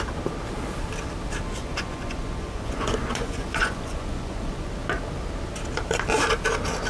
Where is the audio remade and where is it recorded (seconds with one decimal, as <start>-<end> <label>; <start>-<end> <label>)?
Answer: 0.0-1.6 recorded; 1.6-4.7 remade; 4.7-6.9 recorded